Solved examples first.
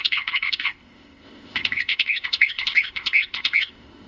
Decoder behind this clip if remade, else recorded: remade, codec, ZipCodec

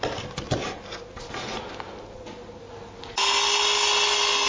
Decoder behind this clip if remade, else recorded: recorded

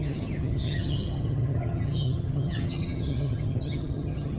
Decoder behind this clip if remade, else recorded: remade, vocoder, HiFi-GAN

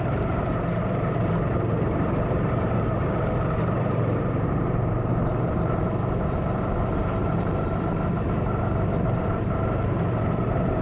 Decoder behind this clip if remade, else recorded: remade, vocoder, BigVGAN v2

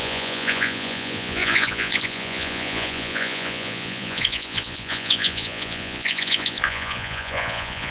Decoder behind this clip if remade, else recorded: remade, vocoder, Vocos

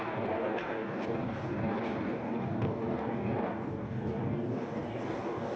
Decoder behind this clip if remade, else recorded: remade, codec, DAC